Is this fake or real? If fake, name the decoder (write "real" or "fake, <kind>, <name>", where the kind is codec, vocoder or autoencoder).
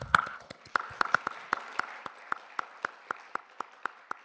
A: real